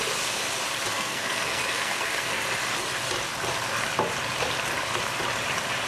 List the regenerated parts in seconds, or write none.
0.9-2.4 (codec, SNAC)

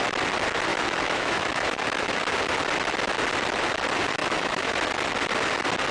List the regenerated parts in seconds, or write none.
0.7-2.2 (autoencoder, DAC-VAE); 4.2-4.9

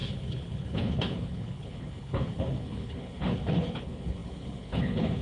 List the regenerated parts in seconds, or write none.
0.0-5.2 (codec, HILCodec)

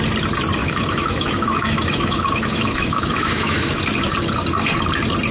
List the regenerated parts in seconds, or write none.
0.6-3.8 (autoencoder, DAC-VAE)